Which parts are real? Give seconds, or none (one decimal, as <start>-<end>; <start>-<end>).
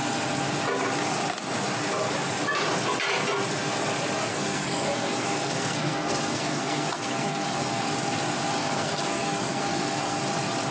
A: 0.0-4.3; 7.8-8.6; 10.2-10.7